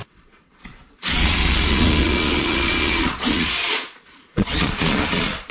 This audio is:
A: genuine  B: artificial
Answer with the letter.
B